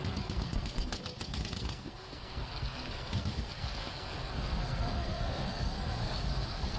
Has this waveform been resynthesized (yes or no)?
yes